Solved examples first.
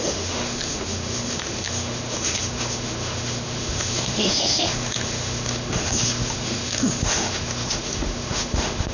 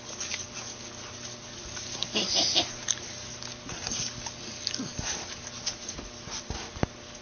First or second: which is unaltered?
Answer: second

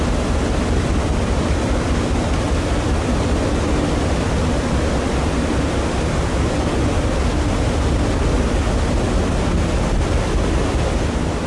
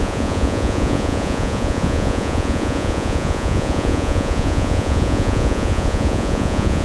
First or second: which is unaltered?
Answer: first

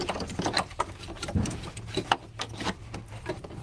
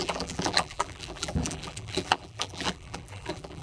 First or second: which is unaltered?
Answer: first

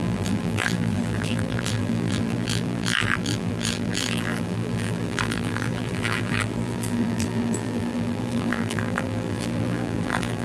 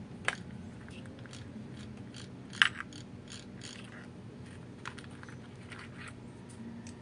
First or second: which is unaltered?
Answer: second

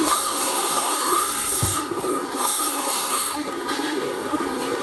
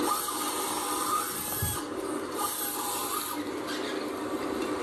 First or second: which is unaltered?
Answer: second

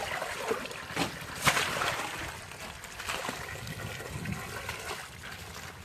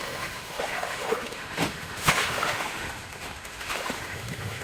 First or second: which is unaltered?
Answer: first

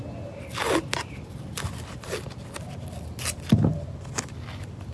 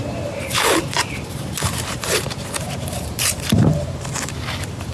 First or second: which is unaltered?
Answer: first